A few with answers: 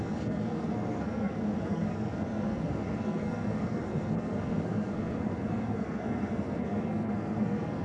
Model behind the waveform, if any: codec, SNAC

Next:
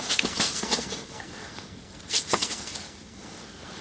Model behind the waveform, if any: codec, SNAC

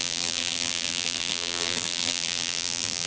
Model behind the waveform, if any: vocoder, BigVGAN v2